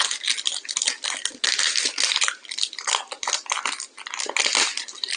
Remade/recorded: recorded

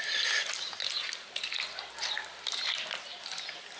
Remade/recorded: recorded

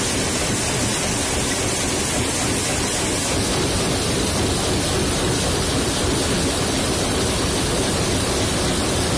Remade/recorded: recorded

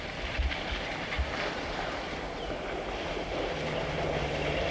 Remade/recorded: recorded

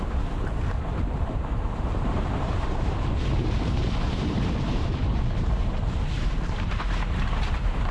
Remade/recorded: remade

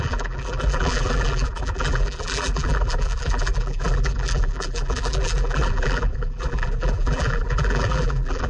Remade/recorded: remade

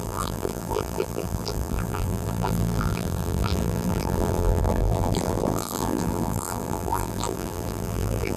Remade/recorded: remade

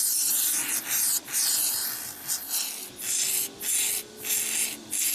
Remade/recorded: recorded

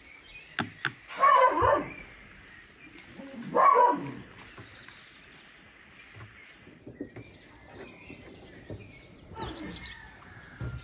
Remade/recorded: recorded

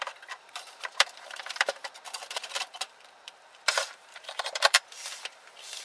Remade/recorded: remade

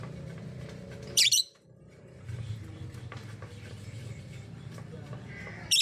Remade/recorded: remade